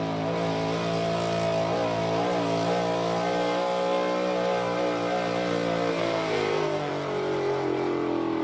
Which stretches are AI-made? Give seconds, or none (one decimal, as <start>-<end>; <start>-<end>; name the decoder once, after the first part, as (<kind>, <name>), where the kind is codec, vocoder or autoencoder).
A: 5.9-6.9 (codec, SNAC)